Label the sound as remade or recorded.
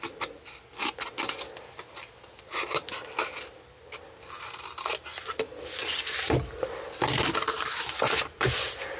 recorded